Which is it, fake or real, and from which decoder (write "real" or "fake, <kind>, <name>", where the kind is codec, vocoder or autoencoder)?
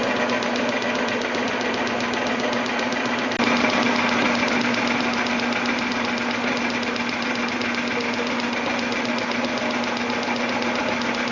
real